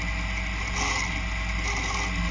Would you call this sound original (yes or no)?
yes